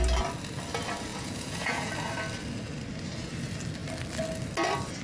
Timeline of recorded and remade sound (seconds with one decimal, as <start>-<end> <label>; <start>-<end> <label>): 0.0-1.1 recorded; 1.1-1.9 remade; 1.9-5.0 recorded

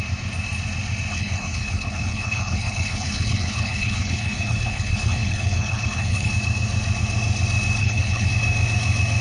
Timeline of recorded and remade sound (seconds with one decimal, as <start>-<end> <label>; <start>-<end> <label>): 0.0-1.1 recorded; 1.1-6.3 remade; 6.3-7.8 recorded; 7.8-8.3 remade; 8.3-9.2 recorded